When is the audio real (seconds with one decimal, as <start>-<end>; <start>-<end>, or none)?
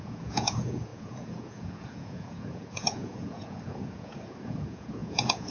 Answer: none